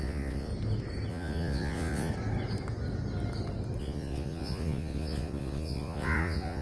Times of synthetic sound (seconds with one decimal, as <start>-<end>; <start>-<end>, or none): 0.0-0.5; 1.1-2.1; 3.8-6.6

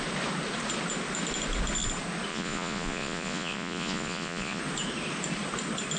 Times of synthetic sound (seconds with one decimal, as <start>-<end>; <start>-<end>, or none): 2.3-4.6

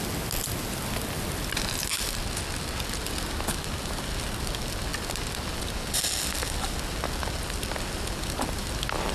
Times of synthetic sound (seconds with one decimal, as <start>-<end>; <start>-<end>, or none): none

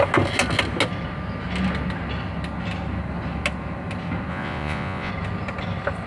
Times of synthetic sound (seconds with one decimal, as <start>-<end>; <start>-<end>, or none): 4.3-5.1

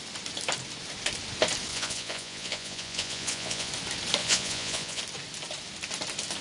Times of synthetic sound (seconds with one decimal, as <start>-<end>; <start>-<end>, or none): 1.7-3.7; 4.2-5.0